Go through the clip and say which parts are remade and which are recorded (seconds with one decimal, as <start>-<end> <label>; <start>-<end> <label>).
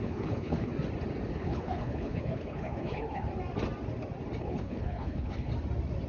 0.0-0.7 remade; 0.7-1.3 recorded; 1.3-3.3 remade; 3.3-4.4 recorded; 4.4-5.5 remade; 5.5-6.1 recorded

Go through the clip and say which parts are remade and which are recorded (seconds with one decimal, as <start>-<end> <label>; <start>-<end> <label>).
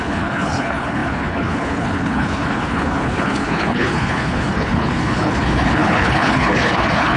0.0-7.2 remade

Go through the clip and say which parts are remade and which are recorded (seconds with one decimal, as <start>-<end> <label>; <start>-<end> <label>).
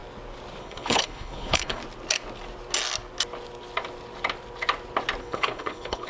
0.0-0.6 recorded; 0.6-1.8 remade; 1.8-5.2 recorded; 5.2-6.1 remade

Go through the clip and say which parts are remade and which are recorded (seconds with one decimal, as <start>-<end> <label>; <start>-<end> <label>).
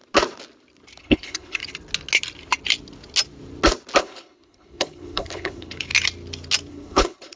0.0-1.0 recorded; 1.0-1.6 remade; 1.6-4.0 recorded; 4.0-5.9 remade; 5.9-6.7 recorded; 6.7-7.4 remade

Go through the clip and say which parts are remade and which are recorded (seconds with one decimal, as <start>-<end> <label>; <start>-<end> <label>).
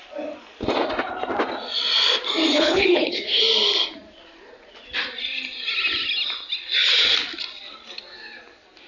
0.0-2.5 recorded; 2.5-3.4 remade; 3.4-8.9 recorded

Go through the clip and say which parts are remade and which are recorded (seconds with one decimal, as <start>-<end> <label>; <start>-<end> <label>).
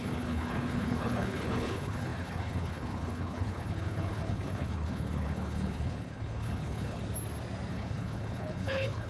0.0-7.0 remade; 7.0-7.7 recorded; 7.7-9.1 remade